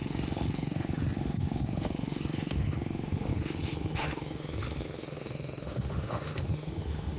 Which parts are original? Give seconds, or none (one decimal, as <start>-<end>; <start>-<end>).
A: none